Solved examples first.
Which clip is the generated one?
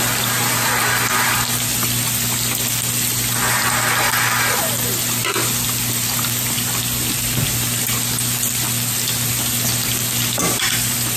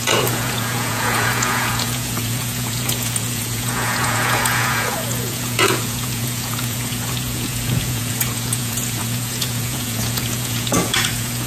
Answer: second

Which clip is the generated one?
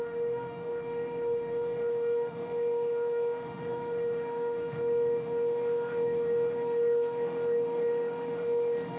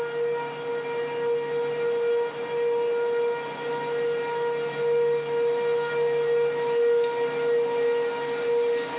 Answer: first